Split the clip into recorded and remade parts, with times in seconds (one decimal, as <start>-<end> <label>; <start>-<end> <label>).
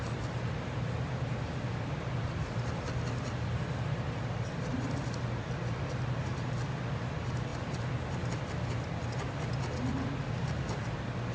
0.0-11.3 recorded